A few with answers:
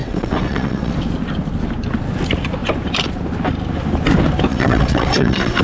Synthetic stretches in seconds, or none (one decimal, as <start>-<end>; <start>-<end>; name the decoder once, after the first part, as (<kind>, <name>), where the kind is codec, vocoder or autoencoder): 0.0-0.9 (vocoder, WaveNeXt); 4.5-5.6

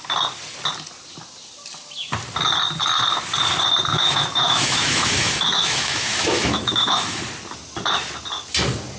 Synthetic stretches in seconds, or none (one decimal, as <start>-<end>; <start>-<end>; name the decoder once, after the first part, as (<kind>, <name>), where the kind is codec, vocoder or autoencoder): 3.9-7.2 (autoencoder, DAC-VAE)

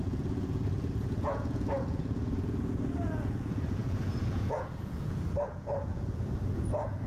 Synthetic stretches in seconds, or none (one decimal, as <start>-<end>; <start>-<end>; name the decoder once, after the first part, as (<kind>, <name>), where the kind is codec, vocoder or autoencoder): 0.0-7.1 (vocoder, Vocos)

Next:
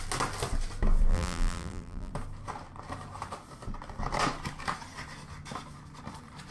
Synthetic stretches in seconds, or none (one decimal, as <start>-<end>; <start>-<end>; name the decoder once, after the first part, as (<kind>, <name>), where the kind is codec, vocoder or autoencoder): 1.1-2.1 (vocoder, BigVGAN v2)